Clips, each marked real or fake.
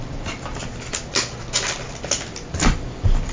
real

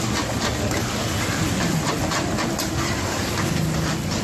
real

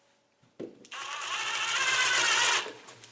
real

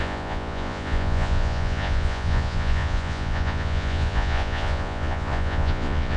fake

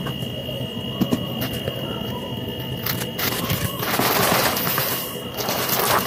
real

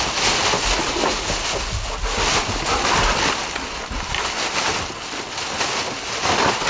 real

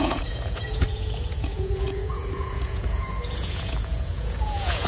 fake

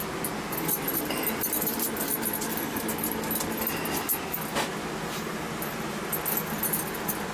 real